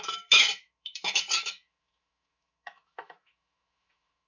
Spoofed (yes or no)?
yes